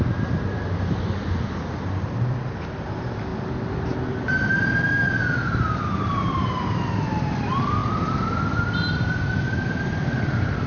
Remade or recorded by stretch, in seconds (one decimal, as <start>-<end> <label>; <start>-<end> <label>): 0.0-3.3 recorded; 3.3-4.6 remade; 4.6-7.8 recorded; 7.8-8.6 remade; 8.6-10.7 recorded

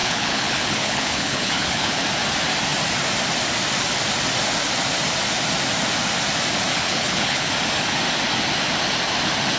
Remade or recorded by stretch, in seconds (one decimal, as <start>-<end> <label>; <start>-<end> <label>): 0.0-2.0 remade; 2.0-6.7 recorded; 6.7-7.5 remade; 7.5-9.6 recorded